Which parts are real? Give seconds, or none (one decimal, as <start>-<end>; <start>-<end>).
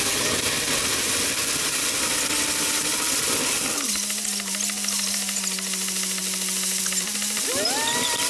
0.0-8.3